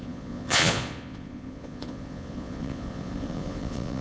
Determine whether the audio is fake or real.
fake